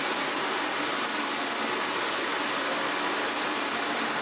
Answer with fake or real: real